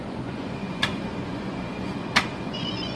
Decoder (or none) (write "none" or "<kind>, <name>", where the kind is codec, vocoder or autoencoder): vocoder, Vocos